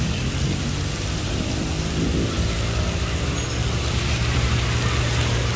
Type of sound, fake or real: real